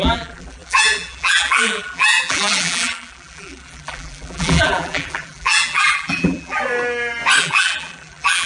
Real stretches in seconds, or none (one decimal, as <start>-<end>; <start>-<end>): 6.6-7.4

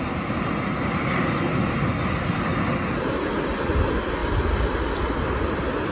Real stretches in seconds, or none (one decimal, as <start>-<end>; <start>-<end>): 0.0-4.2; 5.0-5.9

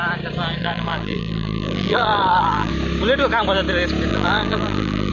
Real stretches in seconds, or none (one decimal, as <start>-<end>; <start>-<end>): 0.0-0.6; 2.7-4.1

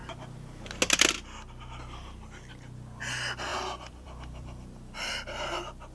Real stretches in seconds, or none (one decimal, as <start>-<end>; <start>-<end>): 0.0-3.5; 5.1-5.9

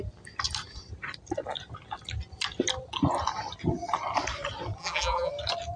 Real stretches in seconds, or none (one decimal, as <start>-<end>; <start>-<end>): 0.0-4.8; 5.3-5.8

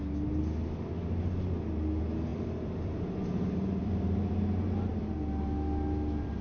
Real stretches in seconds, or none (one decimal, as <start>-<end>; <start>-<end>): 0.0-2.3; 4.3-4.9

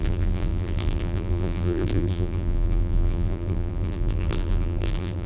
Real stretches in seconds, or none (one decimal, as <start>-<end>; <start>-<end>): none

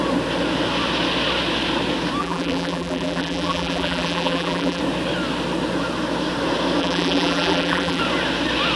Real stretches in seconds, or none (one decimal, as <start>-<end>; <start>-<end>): 0.0-2.2; 4.8-6.8; 8.0-8.8